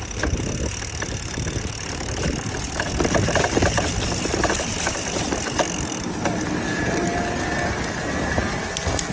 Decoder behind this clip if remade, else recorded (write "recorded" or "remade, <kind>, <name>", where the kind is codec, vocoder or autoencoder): recorded